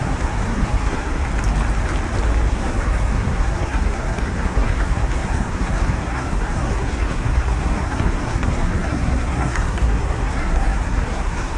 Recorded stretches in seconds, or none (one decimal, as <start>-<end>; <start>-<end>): 1.2-2.5